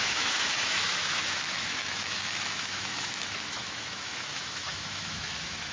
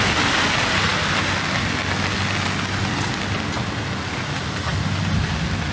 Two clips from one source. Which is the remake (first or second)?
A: first